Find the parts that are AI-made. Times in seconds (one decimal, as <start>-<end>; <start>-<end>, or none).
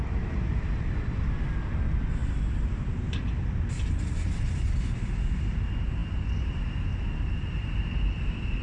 none